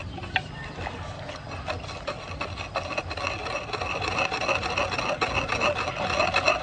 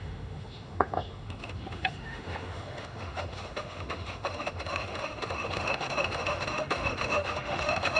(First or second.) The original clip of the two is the first